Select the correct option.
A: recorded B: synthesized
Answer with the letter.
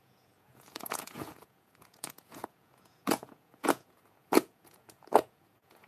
B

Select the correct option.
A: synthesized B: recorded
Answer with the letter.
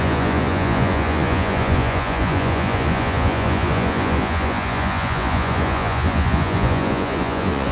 A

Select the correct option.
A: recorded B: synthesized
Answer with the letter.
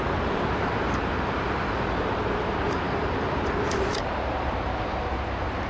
B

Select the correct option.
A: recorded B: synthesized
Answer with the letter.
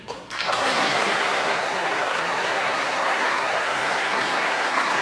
B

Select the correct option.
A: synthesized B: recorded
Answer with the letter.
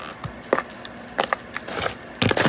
B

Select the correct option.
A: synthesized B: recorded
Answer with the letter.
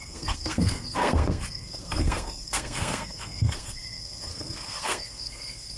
A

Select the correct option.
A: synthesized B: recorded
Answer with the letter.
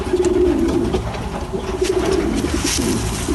B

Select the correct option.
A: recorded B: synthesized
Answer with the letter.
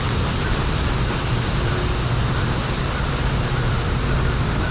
A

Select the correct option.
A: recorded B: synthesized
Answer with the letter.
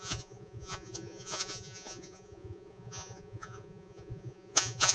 B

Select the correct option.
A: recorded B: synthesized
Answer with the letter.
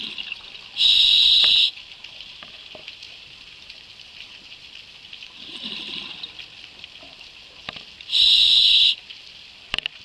A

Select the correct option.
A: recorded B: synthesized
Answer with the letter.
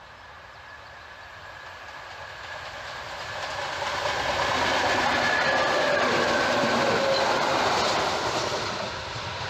A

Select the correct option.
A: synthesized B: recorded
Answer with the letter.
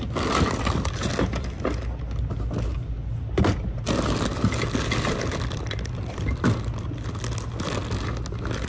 B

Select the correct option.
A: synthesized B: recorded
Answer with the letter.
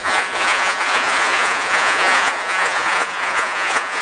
A